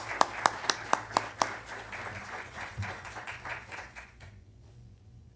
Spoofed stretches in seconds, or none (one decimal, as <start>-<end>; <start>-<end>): 2.2-5.4